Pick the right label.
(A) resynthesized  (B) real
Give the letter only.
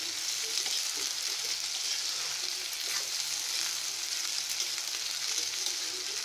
B